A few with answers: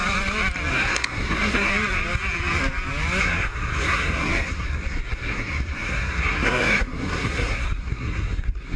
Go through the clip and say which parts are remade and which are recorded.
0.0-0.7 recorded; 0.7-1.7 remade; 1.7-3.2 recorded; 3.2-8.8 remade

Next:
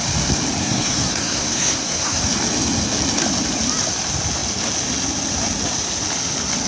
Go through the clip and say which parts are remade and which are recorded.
0.0-0.6 recorded; 0.6-2.2 remade; 2.2-6.7 recorded

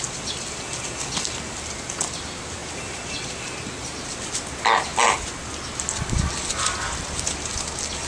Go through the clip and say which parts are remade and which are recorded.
0.0-8.1 recorded

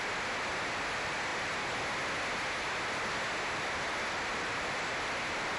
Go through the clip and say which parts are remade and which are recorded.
0.0-5.6 recorded